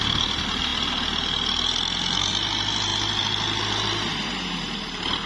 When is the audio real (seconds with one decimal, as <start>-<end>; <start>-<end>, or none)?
0.0-5.3